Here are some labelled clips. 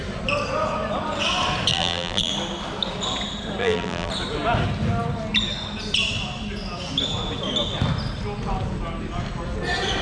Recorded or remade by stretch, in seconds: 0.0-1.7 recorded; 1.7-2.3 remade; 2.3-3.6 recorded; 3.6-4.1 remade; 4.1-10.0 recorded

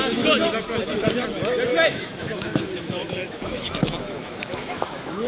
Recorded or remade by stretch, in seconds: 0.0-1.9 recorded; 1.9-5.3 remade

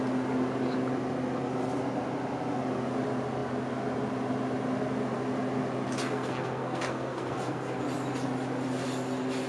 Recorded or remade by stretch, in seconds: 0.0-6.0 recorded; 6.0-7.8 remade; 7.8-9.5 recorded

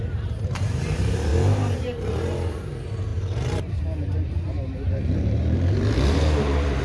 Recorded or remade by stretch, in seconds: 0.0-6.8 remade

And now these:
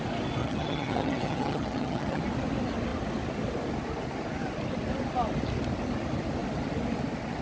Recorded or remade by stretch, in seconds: 0.0-0.4 recorded; 0.4-2.2 remade; 2.2-7.4 recorded

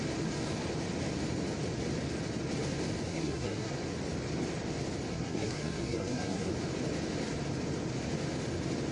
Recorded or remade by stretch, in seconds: 0.0-3.1 recorded; 3.1-3.7 remade; 3.7-5.1 recorded; 5.1-6.5 remade; 6.5-8.9 recorded

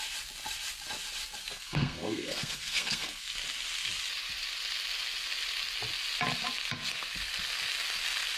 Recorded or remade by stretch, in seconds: 0.0-1.4 recorded; 1.4-3.3 remade; 3.3-8.4 recorded